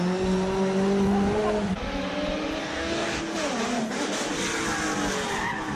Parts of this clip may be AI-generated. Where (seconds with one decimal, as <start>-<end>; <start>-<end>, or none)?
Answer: 2.6-3.2